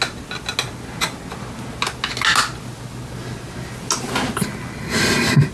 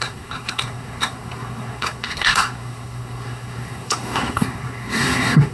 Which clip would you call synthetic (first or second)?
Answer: second